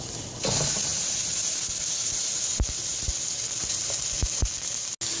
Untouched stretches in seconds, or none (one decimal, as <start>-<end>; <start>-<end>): 0.0-5.2